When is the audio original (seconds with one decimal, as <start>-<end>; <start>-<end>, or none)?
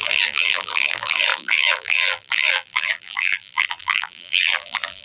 none